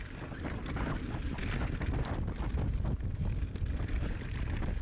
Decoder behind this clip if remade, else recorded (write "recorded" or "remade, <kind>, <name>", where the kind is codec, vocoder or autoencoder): recorded